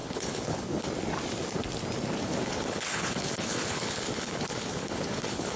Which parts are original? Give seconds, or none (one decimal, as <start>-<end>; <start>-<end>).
0.9-2.2

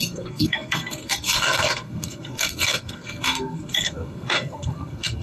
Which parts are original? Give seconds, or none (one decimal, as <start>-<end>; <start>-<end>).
none